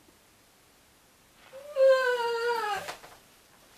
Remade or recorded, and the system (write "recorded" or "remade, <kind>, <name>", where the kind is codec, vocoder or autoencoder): recorded